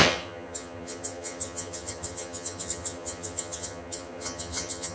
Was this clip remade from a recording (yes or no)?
yes